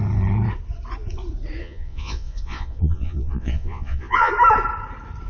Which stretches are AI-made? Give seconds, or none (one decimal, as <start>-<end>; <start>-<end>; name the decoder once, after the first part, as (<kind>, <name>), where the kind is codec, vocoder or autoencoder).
1.6-4.3 (vocoder, Vocos)